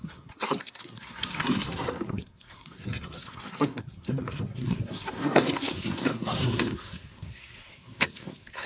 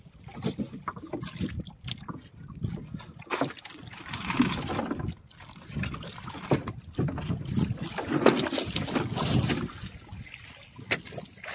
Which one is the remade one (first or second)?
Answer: first